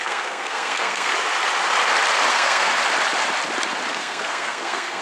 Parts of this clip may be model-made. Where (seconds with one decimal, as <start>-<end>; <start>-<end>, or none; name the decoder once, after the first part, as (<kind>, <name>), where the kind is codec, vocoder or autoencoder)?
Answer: 0.0-1.1 (codec, SNAC); 2.3-2.8; 3.9-5.0

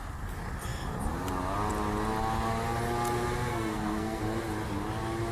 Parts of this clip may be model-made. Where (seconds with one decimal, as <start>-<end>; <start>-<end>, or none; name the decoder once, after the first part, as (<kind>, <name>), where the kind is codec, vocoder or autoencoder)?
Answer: 3.5-4.2 (codec, SNAC)

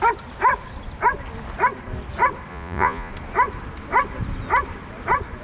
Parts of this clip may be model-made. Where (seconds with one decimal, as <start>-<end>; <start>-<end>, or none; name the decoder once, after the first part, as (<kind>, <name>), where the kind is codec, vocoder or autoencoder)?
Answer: 2.5-3.1 (vocoder, Vocos)